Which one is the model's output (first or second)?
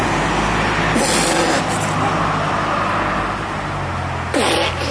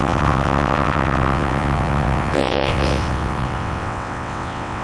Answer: second